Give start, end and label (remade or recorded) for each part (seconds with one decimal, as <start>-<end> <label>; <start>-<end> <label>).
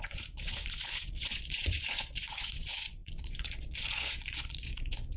0.0-5.2 remade